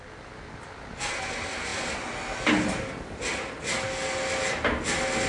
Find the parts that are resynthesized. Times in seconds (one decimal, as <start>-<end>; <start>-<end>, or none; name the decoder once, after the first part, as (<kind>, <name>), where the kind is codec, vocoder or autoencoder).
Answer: none